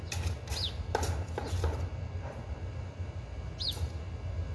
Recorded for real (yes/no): yes